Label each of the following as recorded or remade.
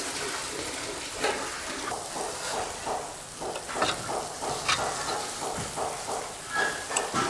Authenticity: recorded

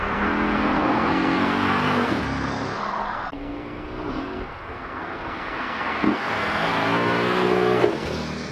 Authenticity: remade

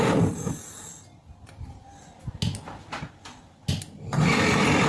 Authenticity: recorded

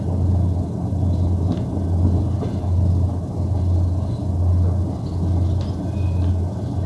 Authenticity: recorded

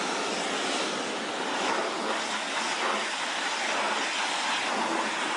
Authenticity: recorded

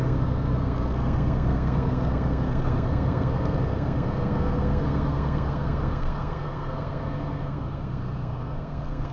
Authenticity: remade